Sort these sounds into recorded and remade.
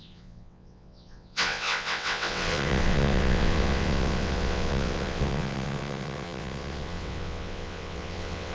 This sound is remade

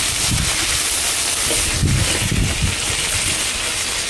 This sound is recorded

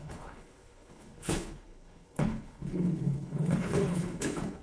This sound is remade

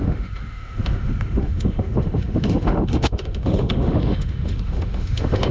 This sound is remade